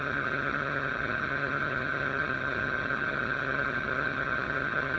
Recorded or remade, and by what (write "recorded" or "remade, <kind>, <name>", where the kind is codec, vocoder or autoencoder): remade, vocoder, HiFi-GAN